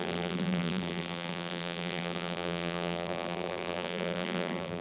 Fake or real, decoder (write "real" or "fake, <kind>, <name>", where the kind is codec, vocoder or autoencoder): fake, vocoder, BigVGAN v2